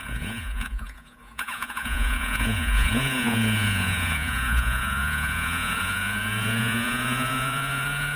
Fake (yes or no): yes